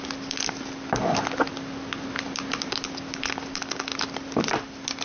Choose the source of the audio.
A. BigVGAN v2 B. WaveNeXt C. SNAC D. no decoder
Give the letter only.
D